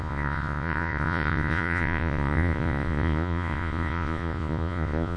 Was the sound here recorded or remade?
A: remade